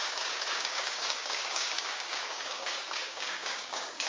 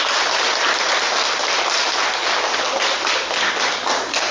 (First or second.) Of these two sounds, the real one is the second